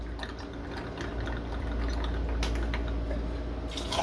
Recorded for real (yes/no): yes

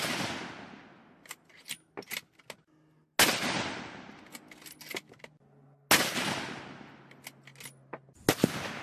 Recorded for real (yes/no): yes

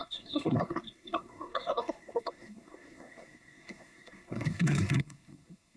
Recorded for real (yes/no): no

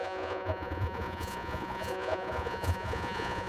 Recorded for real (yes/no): no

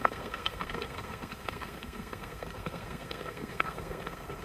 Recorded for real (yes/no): no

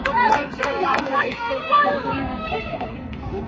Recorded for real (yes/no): no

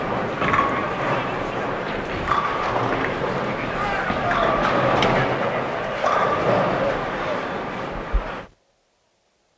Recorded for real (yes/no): yes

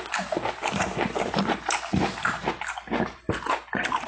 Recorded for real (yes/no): yes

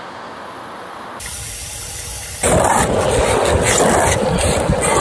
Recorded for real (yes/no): yes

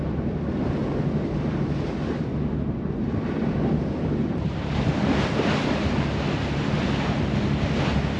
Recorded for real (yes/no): no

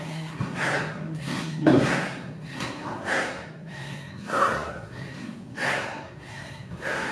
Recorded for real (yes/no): no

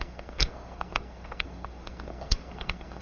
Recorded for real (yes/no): no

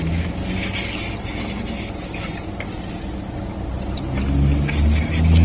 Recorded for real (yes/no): yes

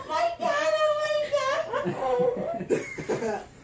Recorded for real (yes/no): yes